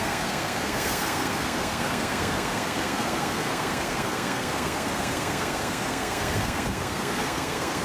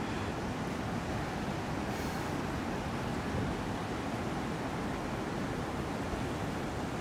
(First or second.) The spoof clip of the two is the first